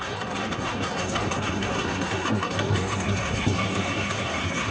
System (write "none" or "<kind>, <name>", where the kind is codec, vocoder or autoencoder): codec, SNAC